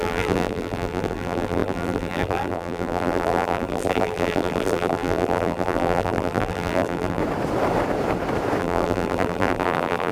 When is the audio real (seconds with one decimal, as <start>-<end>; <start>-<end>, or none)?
7.2-8.6